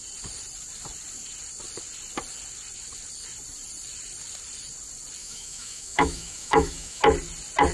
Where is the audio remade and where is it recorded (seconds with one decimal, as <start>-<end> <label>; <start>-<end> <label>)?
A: 0.0-5.2 recorded; 5.2-7.0 remade; 7.0-7.7 recorded